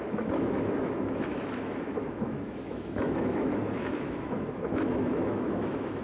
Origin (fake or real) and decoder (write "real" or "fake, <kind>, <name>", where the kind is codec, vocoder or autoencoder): fake, autoencoder, DAC-VAE